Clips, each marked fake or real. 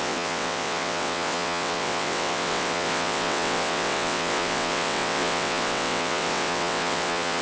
fake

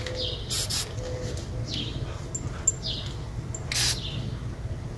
real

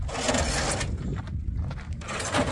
real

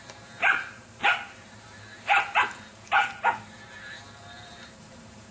fake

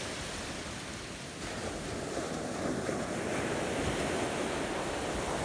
real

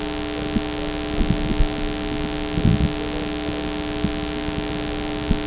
real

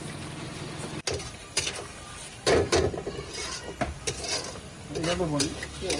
real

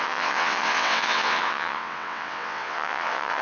fake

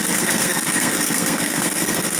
fake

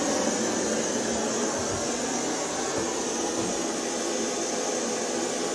real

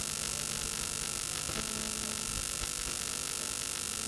real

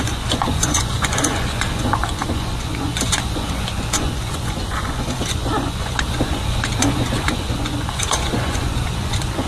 fake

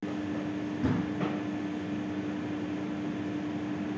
real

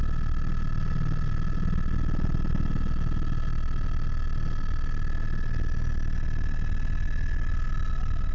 real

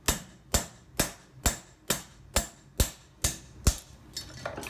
real